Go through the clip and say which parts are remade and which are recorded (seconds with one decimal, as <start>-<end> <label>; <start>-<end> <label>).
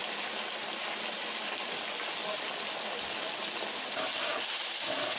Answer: 0.0-5.2 recorded